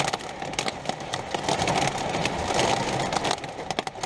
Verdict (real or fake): real